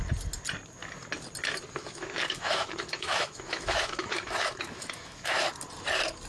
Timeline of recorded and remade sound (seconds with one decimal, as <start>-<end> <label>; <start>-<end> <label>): 0.0-1.8 recorded; 1.8-5.5 remade; 5.5-6.3 recorded